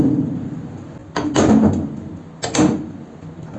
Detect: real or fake real